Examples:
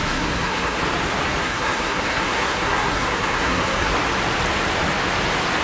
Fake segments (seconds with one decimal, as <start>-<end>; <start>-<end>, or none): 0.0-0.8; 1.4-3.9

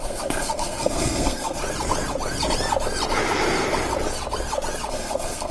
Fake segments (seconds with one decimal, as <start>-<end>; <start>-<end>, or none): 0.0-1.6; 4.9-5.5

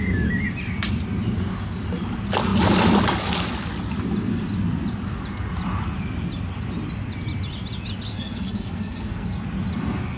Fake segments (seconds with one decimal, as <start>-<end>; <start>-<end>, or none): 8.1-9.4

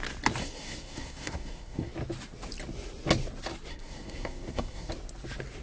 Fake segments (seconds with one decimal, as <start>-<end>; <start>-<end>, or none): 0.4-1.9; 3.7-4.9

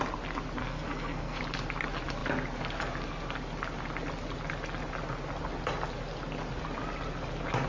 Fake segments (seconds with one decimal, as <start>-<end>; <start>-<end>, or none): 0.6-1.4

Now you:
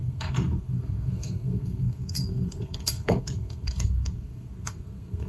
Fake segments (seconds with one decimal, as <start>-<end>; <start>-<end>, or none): 0.0-5.3

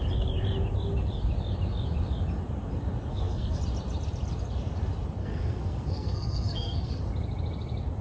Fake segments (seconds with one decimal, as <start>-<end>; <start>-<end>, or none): 3.1-3.6; 5.2-7.0

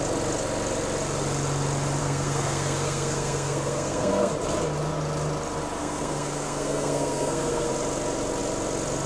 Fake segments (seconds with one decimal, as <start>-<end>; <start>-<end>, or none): 2.0-4.3; 5.8-7.7